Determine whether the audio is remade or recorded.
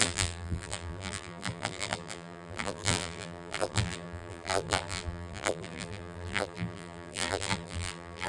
remade